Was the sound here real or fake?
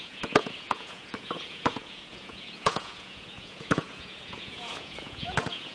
fake